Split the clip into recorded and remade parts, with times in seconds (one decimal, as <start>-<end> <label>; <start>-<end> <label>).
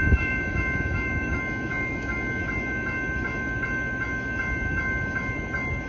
0.0-2.4 remade; 2.4-5.9 recorded